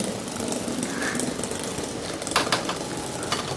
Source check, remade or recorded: recorded